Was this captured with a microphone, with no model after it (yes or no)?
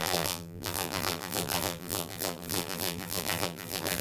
no